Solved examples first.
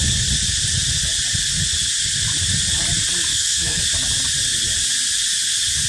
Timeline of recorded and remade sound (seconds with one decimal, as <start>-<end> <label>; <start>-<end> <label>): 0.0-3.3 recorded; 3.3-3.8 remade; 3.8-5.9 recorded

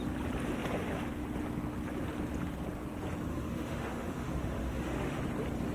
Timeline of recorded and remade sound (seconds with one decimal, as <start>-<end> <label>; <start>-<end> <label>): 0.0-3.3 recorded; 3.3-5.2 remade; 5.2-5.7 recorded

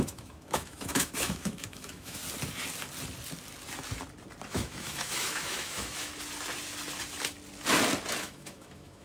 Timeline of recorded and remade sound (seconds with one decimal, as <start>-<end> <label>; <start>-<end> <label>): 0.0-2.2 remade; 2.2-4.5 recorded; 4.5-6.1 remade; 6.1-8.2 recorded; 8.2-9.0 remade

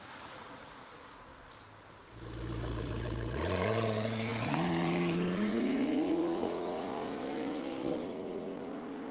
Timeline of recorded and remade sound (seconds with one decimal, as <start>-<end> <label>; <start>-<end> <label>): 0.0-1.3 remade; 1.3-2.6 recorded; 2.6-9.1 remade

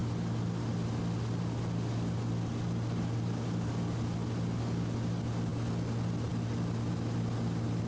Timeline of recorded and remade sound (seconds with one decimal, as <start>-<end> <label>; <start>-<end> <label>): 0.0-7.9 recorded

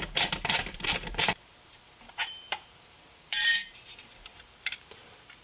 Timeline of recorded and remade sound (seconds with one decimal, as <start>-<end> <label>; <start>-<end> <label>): 0.0-0.6 recorded; 0.6-1.8 remade; 1.8-2.2 recorded; 2.2-5.4 remade

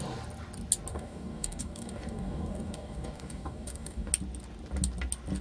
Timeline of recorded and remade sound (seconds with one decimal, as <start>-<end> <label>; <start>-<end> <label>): 0.0-0.9 recorded; 0.9-4.1 remade; 4.1-5.4 recorded

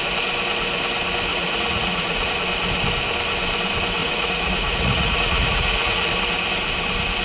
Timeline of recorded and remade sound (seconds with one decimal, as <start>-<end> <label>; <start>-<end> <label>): 0.0-1.3 recorded; 1.3-2.3 remade; 2.3-4.0 recorded; 4.0-6.1 remade; 6.1-7.2 recorded